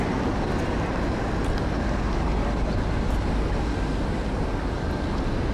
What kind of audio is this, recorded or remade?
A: recorded